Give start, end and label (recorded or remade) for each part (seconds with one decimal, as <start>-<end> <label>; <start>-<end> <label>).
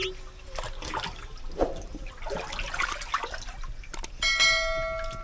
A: 0.0-5.2 recorded